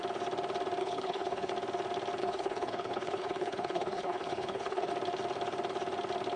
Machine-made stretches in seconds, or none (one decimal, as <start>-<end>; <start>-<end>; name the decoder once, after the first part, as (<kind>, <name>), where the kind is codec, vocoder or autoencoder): 0.8-1.5 (codec, HILCodec); 2.2-4.9